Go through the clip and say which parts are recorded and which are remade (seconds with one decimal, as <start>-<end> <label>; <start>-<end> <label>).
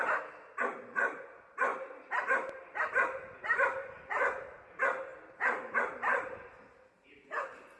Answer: 0.0-1.7 recorded; 1.7-4.2 remade; 4.2-7.8 recorded